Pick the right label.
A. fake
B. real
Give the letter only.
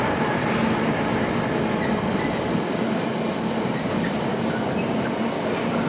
B